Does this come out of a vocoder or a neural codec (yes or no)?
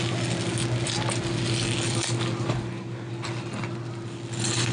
no